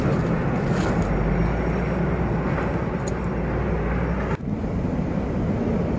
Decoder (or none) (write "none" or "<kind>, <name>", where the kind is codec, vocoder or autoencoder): none